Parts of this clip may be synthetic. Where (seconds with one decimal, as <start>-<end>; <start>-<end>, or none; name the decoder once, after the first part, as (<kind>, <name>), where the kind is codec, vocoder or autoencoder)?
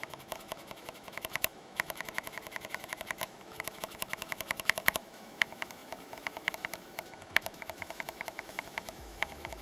0.0-9.6 (autoencoder, DAC-VAE)